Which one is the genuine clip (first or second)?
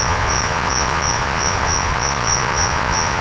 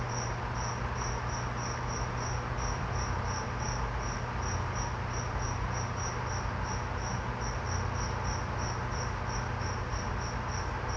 second